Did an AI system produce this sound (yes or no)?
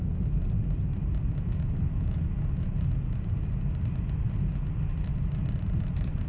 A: no